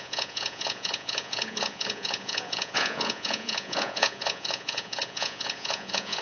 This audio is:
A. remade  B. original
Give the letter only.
A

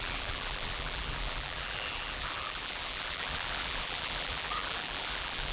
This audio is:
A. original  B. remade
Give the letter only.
B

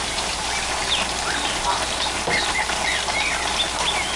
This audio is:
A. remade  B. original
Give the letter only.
B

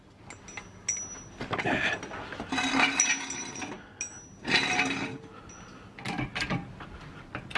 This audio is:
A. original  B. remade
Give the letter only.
A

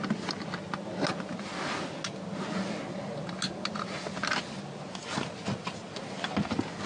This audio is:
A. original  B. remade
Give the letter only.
A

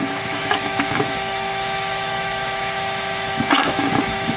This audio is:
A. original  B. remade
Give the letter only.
B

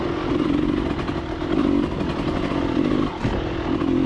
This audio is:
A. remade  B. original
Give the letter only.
B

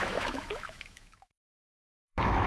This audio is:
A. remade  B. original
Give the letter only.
A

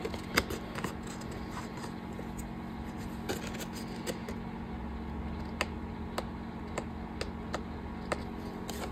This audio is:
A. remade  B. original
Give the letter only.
B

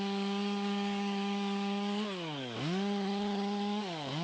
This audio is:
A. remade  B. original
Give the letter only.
A